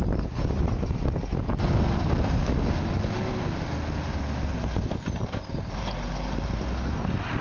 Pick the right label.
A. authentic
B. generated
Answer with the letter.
A